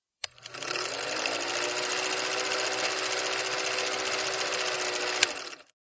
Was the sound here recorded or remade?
recorded